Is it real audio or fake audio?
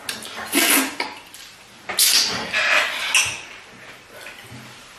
real